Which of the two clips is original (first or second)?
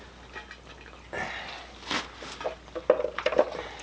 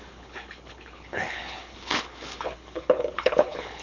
first